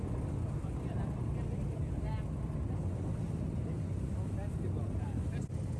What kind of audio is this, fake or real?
fake